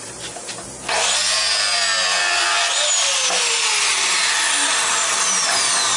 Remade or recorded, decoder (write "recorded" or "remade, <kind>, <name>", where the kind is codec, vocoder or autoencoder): recorded